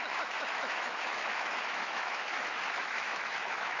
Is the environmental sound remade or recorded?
remade